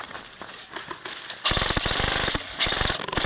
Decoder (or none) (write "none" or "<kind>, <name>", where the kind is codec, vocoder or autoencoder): vocoder, BigVGAN v2